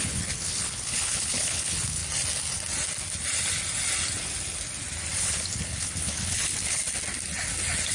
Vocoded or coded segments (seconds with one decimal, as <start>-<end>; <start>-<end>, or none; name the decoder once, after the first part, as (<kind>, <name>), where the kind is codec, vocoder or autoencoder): 0.0-2.0 (codec, HILCodec); 5.2-6.8